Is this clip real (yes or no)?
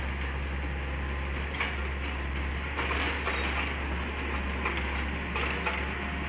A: yes